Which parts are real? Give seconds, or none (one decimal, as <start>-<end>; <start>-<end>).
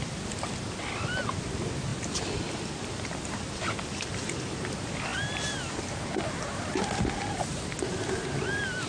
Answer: 0.0-8.9